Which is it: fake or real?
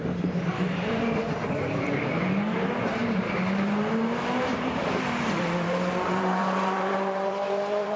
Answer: fake